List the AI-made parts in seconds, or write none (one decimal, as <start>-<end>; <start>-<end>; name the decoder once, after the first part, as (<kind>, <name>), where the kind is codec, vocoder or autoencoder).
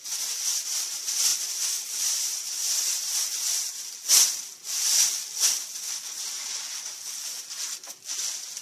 1.3-3.8 (vocoder, BigVGAN v2)